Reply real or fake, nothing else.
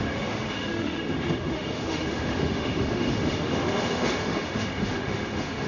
fake